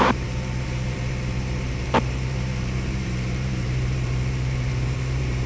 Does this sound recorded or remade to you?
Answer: remade